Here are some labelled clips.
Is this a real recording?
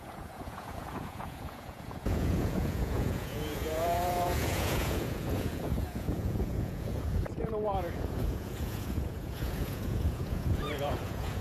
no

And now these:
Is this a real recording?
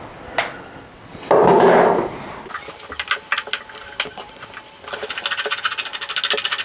yes